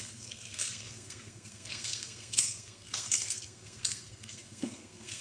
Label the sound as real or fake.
fake